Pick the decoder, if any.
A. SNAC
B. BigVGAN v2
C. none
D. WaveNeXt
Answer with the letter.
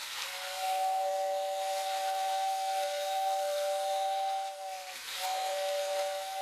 A